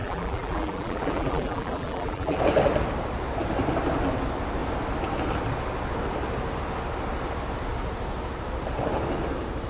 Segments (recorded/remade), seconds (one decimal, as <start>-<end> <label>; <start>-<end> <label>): 0.0-2.4 remade; 2.4-9.7 recorded